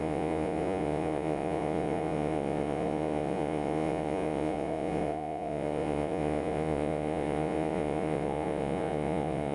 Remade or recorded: remade